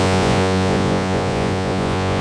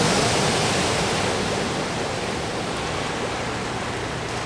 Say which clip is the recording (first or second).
second